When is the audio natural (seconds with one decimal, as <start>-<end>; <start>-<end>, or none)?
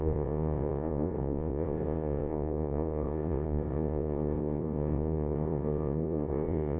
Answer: none